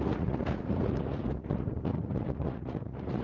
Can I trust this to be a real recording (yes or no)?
no